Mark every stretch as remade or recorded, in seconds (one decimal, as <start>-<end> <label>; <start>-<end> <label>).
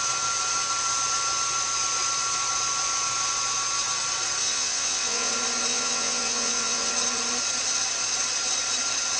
0.0-4.4 recorded; 4.4-5.3 remade; 5.3-5.7 recorded; 5.7-6.9 remade; 6.9-9.2 recorded